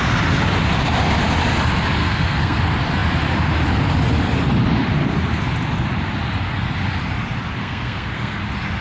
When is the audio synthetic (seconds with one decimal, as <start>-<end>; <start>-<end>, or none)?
2.0-2.6; 7.6-8.4